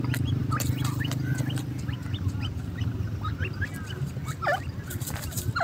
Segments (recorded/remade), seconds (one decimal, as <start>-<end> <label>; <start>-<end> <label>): 0.0-5.6 recorded